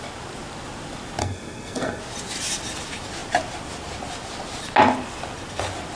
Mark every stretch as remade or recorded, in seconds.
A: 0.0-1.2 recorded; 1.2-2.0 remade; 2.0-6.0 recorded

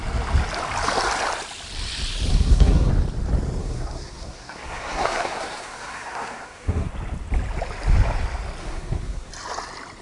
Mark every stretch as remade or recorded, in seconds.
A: 0.0-2.3 recorded; 2.3-2.9 remade; 2.9-3.6 recorded; 3.6-6.9 remade; 6.9-8.6 recorded; 8.6-9.3 remade; 9.3-10.0 recorded

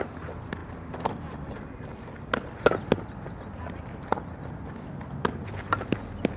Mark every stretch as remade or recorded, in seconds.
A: 0.0-6.4 recorded

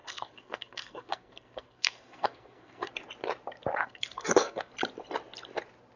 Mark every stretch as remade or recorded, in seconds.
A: 0.0-2.9 remade; 2.9-3.8 recorded; 3.8-4.7 remade; 4.7-6.0 recorded

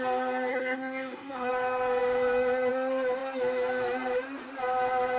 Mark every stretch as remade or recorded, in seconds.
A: 0.0-0.5 recorded; 0.5-1.5 remade; 1.5-5.2 recorded

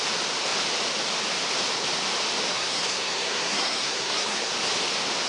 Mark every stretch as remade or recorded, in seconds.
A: 0.0-2.5 recorded; 2.5-4.5 remade; 4.5-5.3 recorded

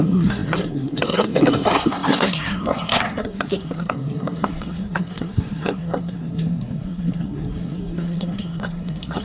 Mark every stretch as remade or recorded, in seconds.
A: 0.0-9.2 remade

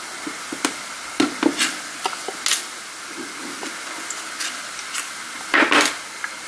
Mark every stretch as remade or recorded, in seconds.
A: 0.0-6.5 recorded